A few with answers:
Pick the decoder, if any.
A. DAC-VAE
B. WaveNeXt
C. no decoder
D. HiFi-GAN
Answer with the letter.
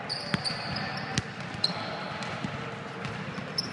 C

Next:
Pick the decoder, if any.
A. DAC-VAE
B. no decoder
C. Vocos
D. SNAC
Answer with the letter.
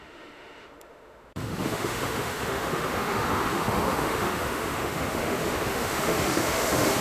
A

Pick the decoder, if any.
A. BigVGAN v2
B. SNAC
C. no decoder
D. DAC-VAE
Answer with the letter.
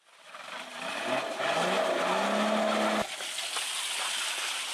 C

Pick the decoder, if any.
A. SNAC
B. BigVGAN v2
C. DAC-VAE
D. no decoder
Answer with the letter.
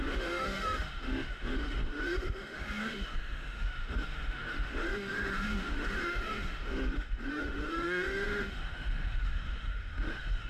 C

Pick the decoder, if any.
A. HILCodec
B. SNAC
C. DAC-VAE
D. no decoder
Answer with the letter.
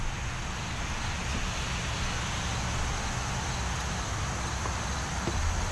D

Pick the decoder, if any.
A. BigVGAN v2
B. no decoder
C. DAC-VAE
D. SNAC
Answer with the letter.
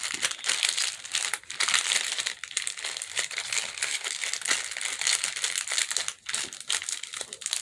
B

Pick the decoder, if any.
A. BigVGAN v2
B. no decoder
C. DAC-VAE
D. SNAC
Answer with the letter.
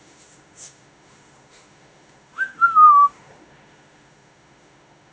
C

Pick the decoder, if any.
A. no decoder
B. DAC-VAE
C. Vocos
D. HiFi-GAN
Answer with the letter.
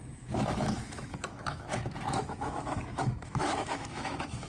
B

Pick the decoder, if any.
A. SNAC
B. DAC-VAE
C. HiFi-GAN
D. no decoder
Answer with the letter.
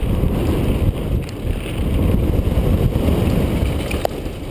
D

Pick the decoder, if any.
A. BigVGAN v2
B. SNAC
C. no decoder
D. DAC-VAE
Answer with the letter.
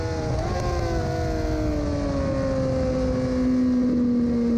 C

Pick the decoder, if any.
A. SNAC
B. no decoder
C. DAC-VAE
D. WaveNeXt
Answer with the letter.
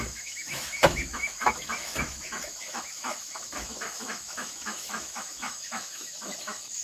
C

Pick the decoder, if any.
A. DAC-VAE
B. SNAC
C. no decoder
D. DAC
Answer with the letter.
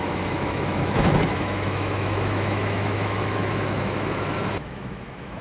A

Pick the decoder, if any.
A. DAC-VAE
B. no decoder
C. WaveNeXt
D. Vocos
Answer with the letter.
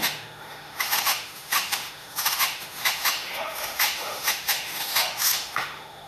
A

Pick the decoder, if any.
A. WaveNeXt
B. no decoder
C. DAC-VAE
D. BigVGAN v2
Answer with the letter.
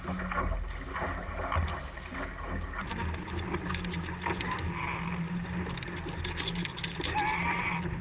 B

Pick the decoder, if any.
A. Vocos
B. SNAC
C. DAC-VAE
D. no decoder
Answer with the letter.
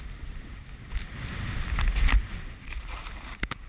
D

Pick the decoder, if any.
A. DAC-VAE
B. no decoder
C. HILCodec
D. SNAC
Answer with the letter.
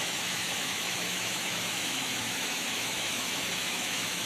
A